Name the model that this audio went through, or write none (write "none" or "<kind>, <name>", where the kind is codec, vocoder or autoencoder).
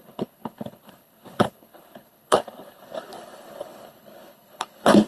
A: codec, HILCodec